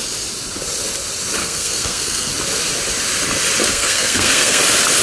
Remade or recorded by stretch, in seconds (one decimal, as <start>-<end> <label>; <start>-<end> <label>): 0.0-1.4 recorded; 1.4-2.3 remade; 2.3-3.7 recorded; 3.7-4.6 remade; 4.6-5.0 recorded